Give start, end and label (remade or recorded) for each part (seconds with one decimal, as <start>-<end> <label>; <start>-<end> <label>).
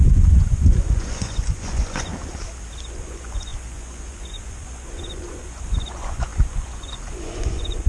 0.0-2.1 remade; 2.1-2.9 recorded; 2.9-7.9 remade